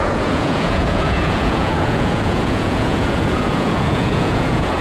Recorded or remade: remade